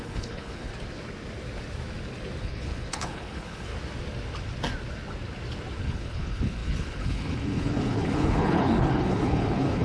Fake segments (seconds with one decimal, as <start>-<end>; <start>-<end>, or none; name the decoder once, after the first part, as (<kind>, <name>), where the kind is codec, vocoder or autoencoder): 0.0-0.7 (codec, HILCodec); 2.4-3.7; 5.8-9.8